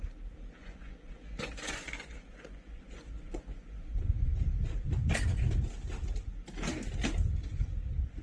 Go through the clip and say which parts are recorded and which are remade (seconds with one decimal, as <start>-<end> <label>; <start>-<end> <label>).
0.0-0.6 recorded; 0.6-4.3 remade; 4.3-8.2 recorded